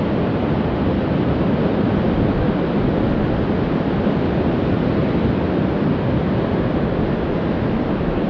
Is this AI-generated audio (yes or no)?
no